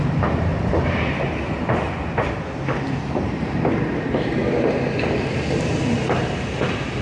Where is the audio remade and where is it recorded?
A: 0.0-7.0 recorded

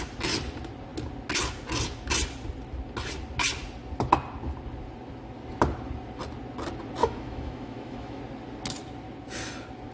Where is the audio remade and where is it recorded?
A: 0.0-7.0 recorded; 7.0-8.2 remade; 8.2-9.9 recorded

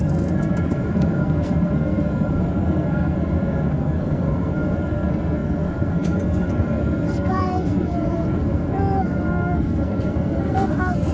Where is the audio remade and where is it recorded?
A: 0.0-11.1 remade